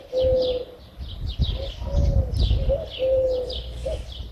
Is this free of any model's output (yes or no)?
yes